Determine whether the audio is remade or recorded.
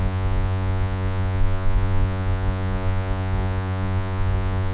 remade